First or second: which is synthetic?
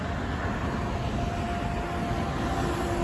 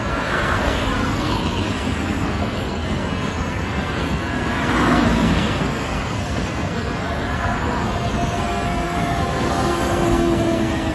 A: second